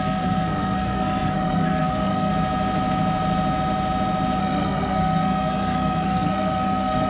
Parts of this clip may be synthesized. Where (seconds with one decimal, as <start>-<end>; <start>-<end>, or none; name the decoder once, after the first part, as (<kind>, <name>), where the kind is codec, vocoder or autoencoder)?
0.0-2.3 (codec, SNAC); 4.4-7.1